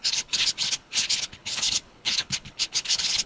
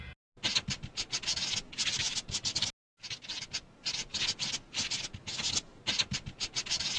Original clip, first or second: second